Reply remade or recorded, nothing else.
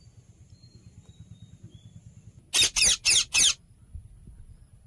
recorded